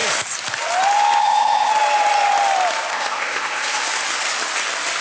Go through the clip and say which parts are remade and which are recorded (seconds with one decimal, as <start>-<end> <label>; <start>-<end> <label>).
0.0-1.2 recorded; 1.2-1.7 remade; 1.7-2.9 recorded; 2.9-3.8 remade; 3.8-5.0 recorded